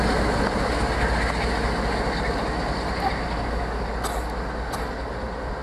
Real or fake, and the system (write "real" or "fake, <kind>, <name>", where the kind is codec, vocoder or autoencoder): real